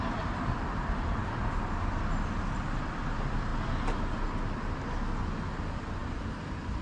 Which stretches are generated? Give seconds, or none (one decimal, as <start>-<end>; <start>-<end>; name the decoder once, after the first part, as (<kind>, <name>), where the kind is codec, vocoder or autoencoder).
none